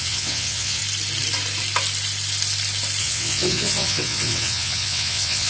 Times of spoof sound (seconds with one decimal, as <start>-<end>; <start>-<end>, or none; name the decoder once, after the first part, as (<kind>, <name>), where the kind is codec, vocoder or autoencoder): 0.0-0.8 (vocoder, WaveNeXt); 3.0-5.5